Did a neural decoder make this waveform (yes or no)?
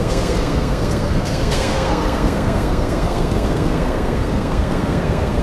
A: yes